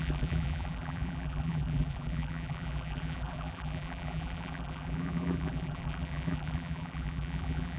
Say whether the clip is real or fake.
fake